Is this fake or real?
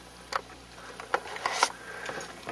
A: real